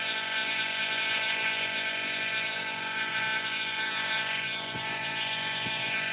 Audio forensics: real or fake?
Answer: fake